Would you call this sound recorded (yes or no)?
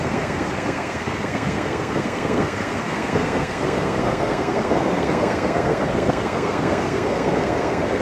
no